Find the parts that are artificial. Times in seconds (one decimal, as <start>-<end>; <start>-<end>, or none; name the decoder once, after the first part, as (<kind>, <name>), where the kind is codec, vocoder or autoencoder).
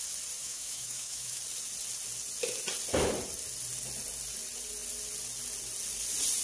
0.4-1.4 (autoencoder, DAC-VAE)